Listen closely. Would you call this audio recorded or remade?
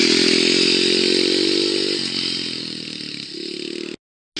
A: recorded